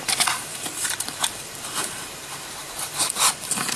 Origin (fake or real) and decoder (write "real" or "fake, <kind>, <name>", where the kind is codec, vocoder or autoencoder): fake, vocoder, BigVGAN v2